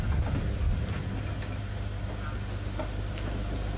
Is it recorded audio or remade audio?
recorded